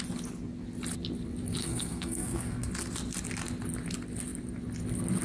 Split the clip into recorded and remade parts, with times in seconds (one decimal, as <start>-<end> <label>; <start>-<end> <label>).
0.0-1.6 recorded; 1.6-2.7 remade; 2.7-5.2 recorded